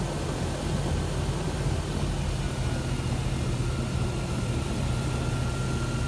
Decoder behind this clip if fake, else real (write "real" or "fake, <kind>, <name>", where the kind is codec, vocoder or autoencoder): real